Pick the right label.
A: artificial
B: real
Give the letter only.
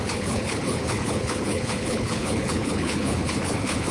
A